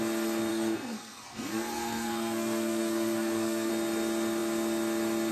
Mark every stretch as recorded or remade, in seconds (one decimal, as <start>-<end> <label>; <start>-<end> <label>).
0.0-0.5 recorded; 0.5-3.7 remade; 3.7-5.3 recorded